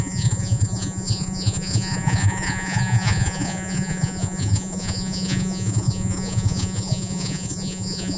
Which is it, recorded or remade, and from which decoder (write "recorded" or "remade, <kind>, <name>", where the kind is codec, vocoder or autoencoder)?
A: remade, vocoder, Vocos